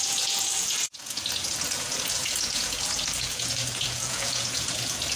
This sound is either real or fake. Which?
fake